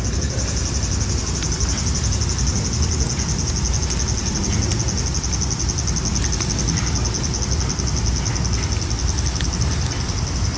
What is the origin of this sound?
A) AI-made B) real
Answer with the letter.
B